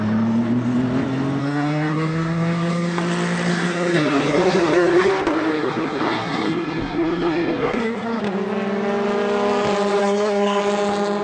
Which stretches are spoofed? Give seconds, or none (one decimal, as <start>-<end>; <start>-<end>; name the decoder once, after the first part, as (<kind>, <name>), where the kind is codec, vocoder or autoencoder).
1.4-3.0 (codec, SNAC); 3.5-5.1; 5.5-8.2; 10.0-10.6